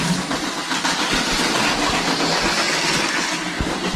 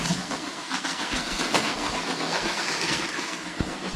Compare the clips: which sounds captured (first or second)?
first